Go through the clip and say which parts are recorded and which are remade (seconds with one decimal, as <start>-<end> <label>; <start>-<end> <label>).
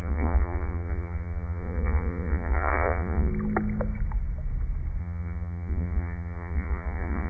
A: 0.0-3.3 remade; 3.3-5.0 recorded; 5.0-7.3 remade